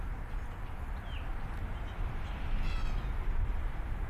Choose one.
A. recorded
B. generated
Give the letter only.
A